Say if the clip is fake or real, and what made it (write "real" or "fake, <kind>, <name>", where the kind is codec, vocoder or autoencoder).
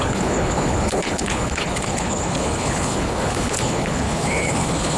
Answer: fake, codec, HILCodec